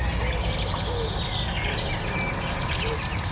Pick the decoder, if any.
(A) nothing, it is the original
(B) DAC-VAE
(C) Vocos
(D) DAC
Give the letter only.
A